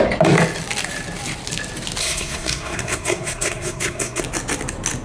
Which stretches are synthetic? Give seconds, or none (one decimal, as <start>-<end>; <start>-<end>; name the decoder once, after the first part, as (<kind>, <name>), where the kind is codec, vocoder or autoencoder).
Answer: 2.0-4.2 (codec, SNAC)